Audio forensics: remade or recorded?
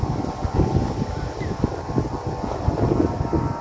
recorded